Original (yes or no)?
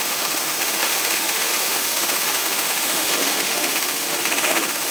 no